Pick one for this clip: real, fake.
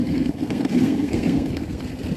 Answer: fake